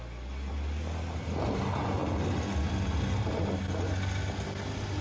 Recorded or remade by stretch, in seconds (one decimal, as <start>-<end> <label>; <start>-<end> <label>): 0.0-5.0 recorded